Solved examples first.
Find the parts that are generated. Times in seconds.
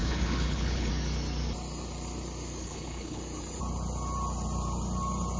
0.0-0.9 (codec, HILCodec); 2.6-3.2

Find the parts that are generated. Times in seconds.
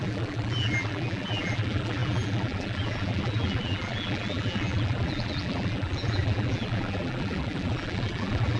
0.0-8.6 (vocoder, BigVGAN v2)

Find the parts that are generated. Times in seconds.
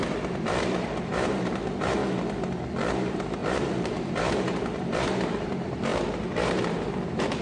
0.0-2.0 (vocoder, BigVGAN v2); 2.9-7.4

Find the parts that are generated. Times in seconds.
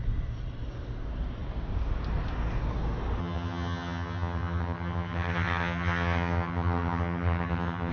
3.2-7.9 (vocoder, HiFi-GAN)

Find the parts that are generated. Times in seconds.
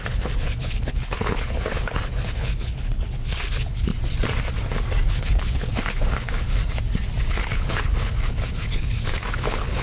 0.0-3.9 (codec, HILCodec); 5.1-6.6; 7.3-9.8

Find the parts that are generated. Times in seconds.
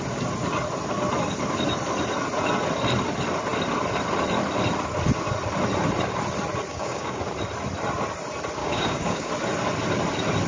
6.7-7.2 (codec, DAC); 8.6-9.3